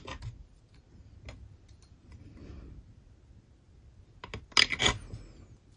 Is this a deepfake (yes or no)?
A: no